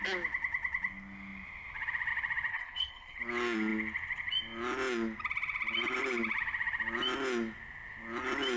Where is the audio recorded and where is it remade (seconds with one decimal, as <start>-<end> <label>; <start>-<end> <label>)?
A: 0.0-2.5 recorded; 2.5-3.2 remade; 3.2-8.6 recorded